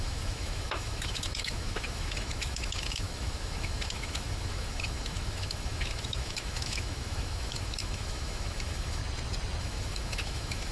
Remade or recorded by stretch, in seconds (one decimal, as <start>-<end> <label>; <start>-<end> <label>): 0.0-9.0 remade; 9.0-9.6 recorded; 9.6-10.7 remade